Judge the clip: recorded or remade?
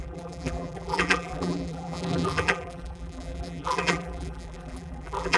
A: remade